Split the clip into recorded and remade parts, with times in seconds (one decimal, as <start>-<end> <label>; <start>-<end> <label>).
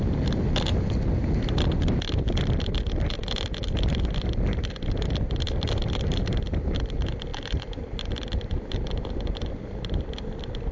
0.0-10.7 recorded